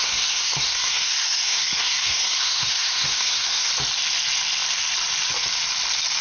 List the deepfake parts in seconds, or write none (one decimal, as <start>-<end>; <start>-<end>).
0.0-3.7